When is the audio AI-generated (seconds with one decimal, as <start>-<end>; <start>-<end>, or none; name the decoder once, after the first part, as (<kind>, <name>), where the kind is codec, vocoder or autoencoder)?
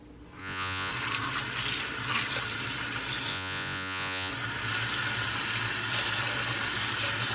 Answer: 0.4-0.9 (vocoder, Vocos); 3.3-4.3